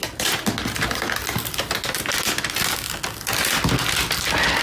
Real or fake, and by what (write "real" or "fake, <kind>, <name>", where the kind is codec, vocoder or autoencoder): real